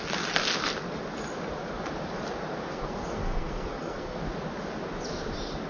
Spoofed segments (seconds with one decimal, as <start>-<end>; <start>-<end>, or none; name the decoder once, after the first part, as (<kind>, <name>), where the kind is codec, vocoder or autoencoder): 2.7-4.2 (codec, SNAC)